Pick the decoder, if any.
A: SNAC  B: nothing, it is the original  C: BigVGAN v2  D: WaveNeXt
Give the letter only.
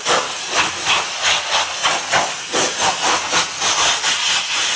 B